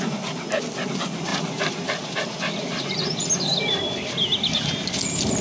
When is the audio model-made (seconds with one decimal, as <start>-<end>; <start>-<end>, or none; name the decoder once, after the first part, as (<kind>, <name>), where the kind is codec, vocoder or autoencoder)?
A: none